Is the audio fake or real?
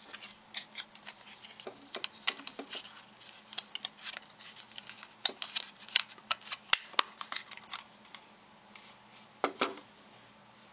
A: real